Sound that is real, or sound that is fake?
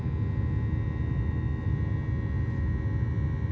real